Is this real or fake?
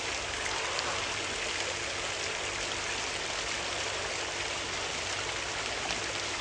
real